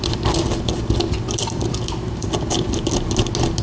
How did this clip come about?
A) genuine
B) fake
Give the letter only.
A